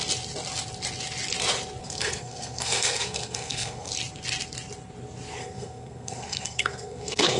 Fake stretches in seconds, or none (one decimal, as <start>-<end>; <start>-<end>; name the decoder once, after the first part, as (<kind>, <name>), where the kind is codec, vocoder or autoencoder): 1.8-3.9 (codec, SNAC); 5.4-7.4